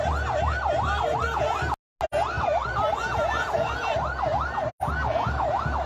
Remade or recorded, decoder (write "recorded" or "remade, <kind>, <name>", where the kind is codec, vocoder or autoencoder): recorded